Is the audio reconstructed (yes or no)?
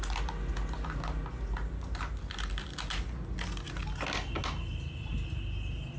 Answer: no